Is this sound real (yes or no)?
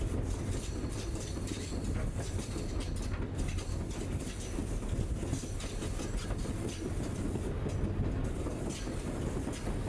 yes